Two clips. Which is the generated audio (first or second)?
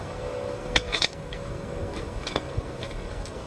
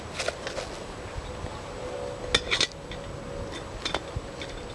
first